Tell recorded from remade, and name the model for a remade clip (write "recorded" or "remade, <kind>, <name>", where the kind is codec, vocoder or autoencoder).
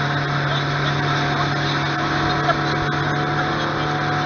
recorded